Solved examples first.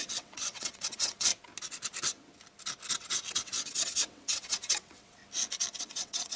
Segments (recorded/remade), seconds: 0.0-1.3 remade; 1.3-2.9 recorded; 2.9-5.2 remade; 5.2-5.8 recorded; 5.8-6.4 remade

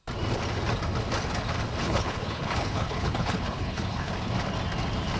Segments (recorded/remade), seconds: 0.0-1.8 recorded; 1.8-4.1 remade; 4.1-5.2 recorded

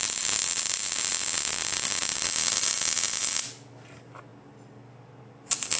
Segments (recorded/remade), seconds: 0.0-5.8 recorded

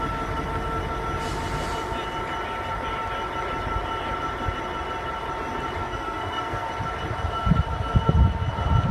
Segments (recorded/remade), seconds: 0.0-5.8 recorded; 5.8-6.7 remade; 6.7-8.9 recorded

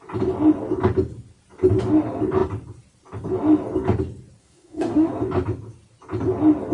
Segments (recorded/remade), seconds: 0.0-4.4 recorded; 4.4-5.1 remade; 5.1-6.7 recorded

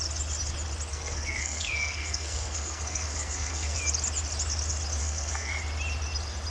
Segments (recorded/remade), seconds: 0.0-0.9 recorded; 0.9-3.8 remade; 3.8-5.0 recorded; 5.0-5.6 remade; 5.6-6.5 recorded

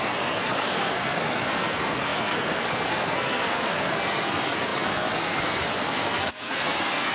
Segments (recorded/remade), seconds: 0.0-7.1 remade